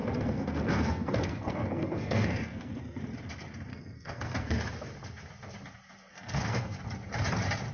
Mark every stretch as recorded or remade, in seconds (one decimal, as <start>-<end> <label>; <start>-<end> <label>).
0.0-3.0 remade; 3.0-3.7 recorded; 3.7-4.6 remade; 4.6-6.1 recorded; 6.1-6.8 remade; 6.8-7.7 recorded